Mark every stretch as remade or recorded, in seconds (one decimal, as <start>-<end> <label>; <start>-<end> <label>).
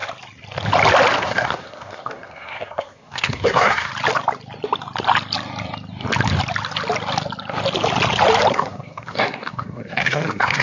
0.0-1.2 recorded; 1.2-3.9 remade; 3.9-8.5 recorded; 8.5-10.6 remade